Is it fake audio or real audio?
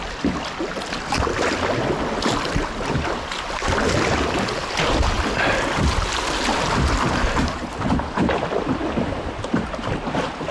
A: real